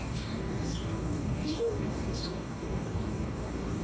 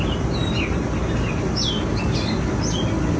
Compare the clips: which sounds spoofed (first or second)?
first